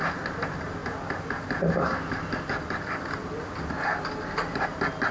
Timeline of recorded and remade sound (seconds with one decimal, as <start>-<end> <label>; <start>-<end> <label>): 0.0-5.1 recorded

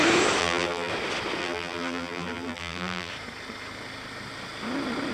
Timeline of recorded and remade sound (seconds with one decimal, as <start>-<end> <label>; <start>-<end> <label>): 0.0-0.4 recorded; 0.4-0.9 remade; 0.9-1.4 recorded; 1.4-3.1 remade; 3.1-5.1 recorded

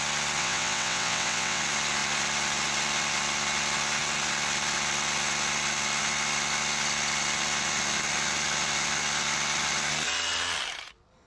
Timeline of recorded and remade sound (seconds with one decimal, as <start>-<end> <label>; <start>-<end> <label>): 0.0-0.4 recorded; 0.4-1.6 remade; 1.6-11.3 recorded